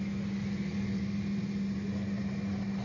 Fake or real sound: real